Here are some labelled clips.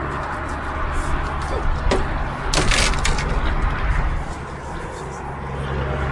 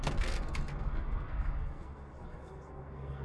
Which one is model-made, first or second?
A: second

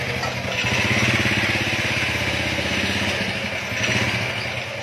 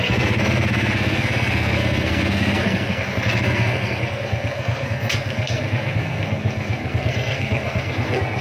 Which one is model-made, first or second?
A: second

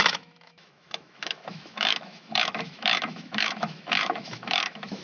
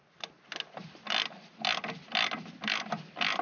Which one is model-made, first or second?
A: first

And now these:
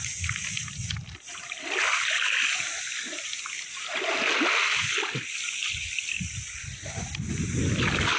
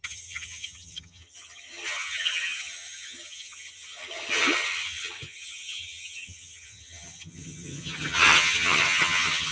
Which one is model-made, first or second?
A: second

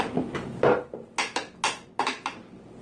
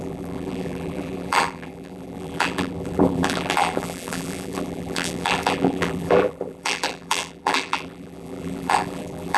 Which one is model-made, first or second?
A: second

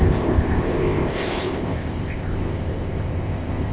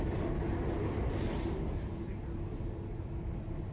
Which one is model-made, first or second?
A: first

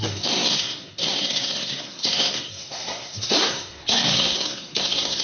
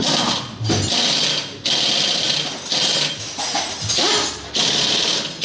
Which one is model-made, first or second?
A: first